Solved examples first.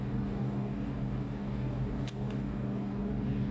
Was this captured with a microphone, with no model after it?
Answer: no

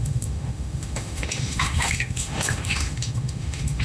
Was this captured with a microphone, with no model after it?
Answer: no